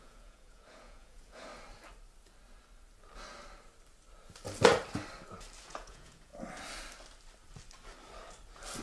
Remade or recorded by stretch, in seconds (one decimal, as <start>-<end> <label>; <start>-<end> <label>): 0.0-1.5 remade; 1.5-5.6 recorded; 5.6-6.3 remade; 6.3-8.8 recorded